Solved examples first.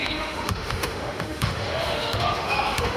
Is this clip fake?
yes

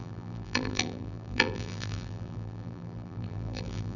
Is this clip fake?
yes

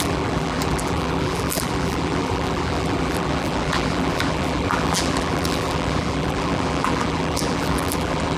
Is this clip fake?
yes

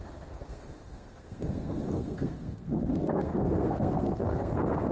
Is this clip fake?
yes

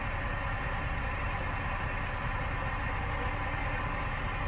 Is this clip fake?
no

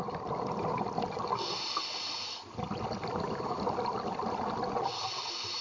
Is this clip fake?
no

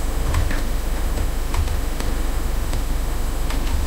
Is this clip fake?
yes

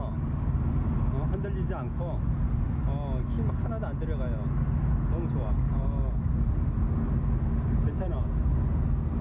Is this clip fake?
no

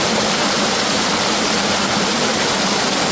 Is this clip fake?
no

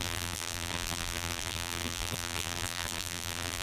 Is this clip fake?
yes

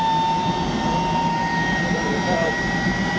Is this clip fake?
no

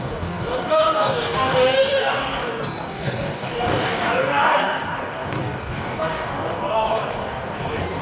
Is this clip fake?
yes